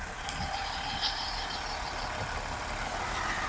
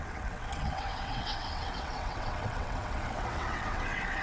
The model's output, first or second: second